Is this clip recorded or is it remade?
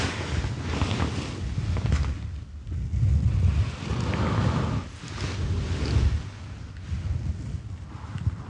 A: recorded